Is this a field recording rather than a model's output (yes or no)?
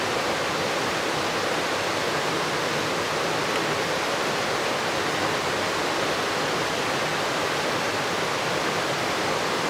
yes